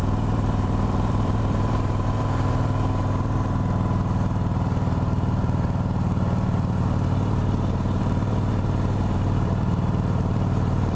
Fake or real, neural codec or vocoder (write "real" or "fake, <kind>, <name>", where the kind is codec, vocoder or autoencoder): fake, vocoder, BigVGAN v2